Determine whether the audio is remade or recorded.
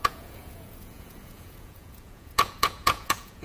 remade